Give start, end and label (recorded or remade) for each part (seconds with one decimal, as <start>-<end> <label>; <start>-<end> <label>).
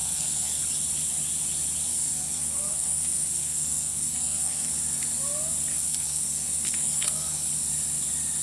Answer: 0.0-0.6 remade; 0.6-1.9 recorded; 1.9-4.7 remade; 4.7-5.7 recorded; 5.7-7.5 remade; 7.5-8.4 recorded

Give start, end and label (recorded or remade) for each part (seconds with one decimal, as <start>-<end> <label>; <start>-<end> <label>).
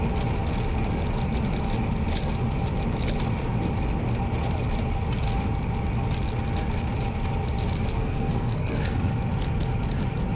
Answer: 0.0-7.9 recorded; 7.9-9.1 remade; 9.1-10.3 recorded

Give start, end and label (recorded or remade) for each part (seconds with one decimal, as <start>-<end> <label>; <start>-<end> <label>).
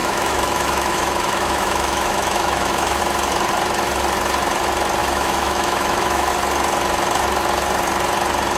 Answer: 0.0-3.0 remade; 3.0-5.0 recorded; 5.0-6.3 remade; 6.3-8.6 recorded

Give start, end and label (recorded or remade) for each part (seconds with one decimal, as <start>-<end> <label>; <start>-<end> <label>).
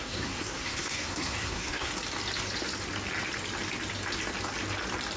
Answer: 0.0-1.9 remade; 1.9-5.2 recorded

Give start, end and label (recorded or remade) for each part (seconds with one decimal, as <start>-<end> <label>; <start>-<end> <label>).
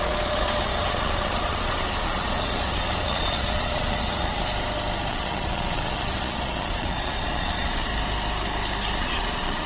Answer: 0.0-4.5 remade; 4.5-5.1 recorded; 5.1-7.9 remade; 7.9-9.0 recorded; 9.0-9.7 remade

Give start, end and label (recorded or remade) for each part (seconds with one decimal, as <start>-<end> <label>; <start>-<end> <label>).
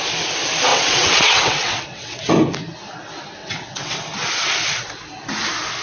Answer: 0.0-0.7 recorded; 0.7-2.3 remade; 2.3-3.4 recorded; 3.4-4.0 remade; 4.0-5.8 recorded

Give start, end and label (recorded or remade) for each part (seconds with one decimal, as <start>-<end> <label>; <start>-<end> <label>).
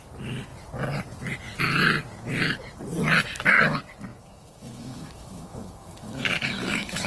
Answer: 0.0-4.1 recorded; 4.1-7.1 remade